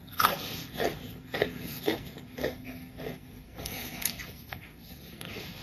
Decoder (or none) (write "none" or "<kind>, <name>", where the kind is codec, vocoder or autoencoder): codec, SNAC